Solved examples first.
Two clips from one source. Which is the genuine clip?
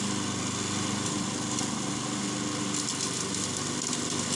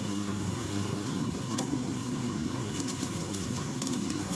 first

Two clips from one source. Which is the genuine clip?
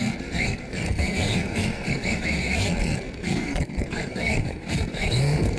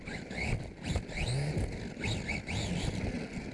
second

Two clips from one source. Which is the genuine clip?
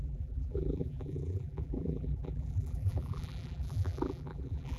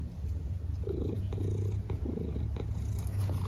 second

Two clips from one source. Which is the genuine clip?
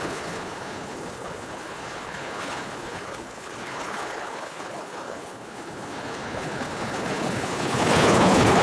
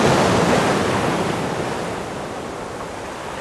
second